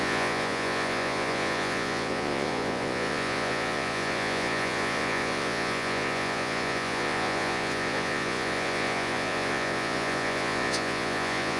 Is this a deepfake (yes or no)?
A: yes